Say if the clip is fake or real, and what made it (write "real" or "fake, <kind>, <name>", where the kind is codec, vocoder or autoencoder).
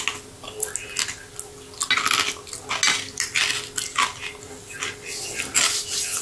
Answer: real